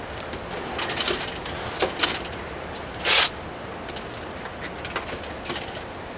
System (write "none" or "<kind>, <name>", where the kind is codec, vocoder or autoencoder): none